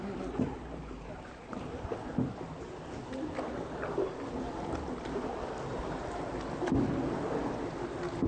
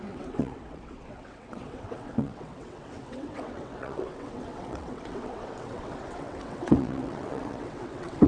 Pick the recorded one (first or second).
first